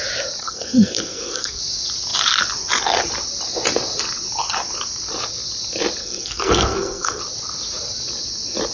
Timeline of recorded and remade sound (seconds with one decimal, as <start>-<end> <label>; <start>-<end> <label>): 0.0-0.4 recorded; 0.4-1.6 remade; 1.6-6.0 recorded; 6.0-7.2 remade; 7.2-8.7 recorded